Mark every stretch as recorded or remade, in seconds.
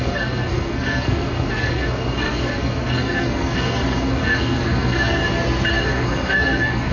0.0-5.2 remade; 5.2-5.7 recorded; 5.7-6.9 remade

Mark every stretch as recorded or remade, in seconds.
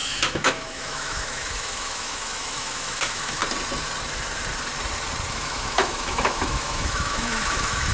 0.0-3.4 remade; 3.4-5.3 recorded; 5.3-7.9 remade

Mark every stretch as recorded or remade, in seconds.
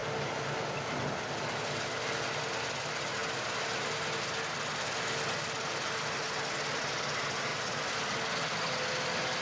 0.0-9.4 recorded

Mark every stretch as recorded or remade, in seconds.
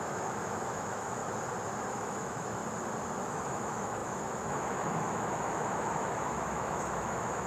0.0-1.2 remade; 1.2-1.9 recorded; 1.9-2.6 remade; 2.6-3.2 recorded; 3.2-7.5 remade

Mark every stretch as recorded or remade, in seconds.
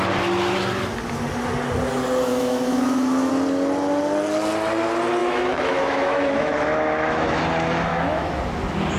0.0-2.3 recorded; 2.3-3.3 remade; 3.3-5.2 recorded; 5.2-7.4 remade; 7.4-7.9 recorded; 7.9-8.4 remade; 8.4-9.0 recorded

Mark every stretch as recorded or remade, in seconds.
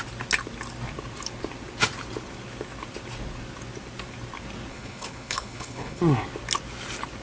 0.0-4.7 recorded; 4.7-6.0 remade; 6.0-7.2 recorded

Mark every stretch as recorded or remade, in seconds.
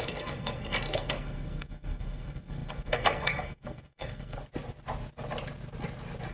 0.0-4.4 remade; 4.4-6.3 recorded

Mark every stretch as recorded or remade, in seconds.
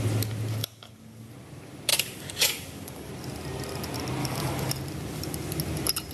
0.0-0.6 recorded; 0.6-1.3 remade; 1.3-1.9 recorded; 1.9-3.1 remade; 3.1-4.2 recorded; 4.2-4.7 remade; 4.7-6.1 recorded